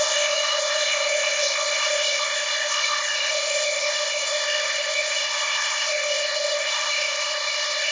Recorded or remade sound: remade